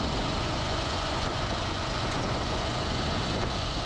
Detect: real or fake fake